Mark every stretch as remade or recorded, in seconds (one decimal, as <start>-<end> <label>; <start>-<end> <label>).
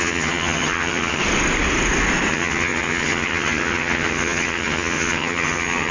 0.0-1.2 remade; 1.2-2.3 recorded; 2.3-5.9 remade